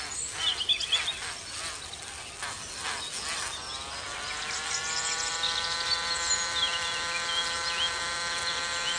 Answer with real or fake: real